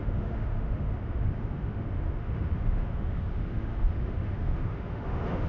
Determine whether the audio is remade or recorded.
remade